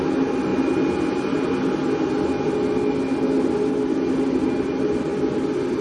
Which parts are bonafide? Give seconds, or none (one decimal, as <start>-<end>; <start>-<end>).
0.0-5.8